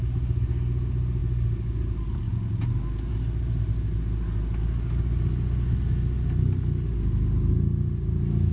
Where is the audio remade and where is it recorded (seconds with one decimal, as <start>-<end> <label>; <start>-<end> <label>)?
0.0-8.5 recorded